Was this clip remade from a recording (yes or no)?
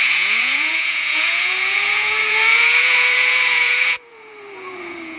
yes